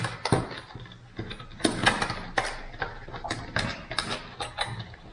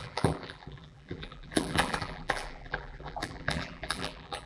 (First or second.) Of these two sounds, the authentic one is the first